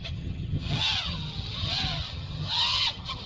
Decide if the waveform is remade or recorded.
remade